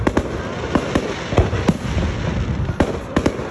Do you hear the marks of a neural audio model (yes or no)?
no